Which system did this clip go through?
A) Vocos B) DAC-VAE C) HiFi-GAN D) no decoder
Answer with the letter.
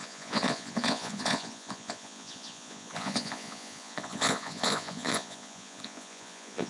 A